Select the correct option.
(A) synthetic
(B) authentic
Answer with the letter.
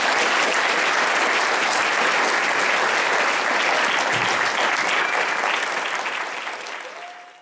B